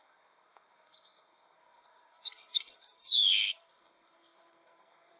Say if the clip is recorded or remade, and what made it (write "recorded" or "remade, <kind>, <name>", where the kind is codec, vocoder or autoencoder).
remade, codec, SNAC